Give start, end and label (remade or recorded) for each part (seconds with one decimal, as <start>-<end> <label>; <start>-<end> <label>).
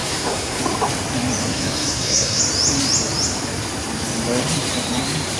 0.0-0.6 remade; 0.6-1.4 recorded; 1.4-2.4 remade; 2.4-5.4 recorded